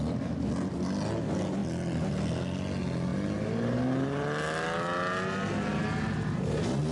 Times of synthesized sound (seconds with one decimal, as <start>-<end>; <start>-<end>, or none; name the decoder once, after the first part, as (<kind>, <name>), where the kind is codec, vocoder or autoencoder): none